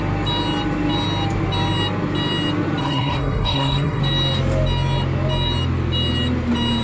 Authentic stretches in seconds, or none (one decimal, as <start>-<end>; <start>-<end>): 0.0-2.8; 4.0-6.8